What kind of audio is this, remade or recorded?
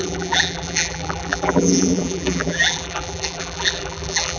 remade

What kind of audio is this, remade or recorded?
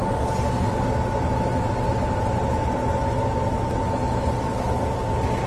recorded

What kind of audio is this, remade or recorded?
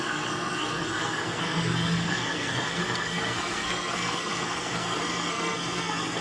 remade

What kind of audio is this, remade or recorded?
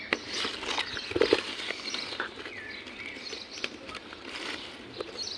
recorded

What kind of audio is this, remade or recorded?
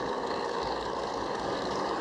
remade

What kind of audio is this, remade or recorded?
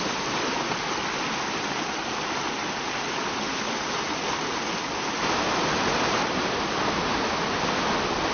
recorded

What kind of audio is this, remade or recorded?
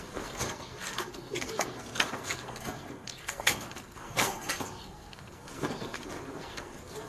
remade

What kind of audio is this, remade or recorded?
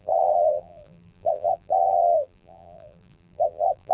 remade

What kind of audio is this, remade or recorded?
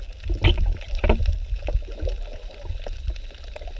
recorded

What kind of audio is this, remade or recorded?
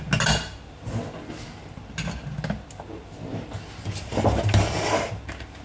recorded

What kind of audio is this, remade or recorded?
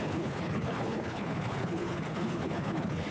remade